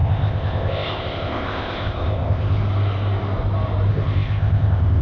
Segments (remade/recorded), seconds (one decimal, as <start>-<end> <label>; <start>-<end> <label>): 0.0-2.6 remade; 2.6-3.9 recorded; 3.9-5.0 remade